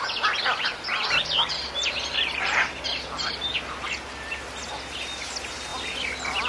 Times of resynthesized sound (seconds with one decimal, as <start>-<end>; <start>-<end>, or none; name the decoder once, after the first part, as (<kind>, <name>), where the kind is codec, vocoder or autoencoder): none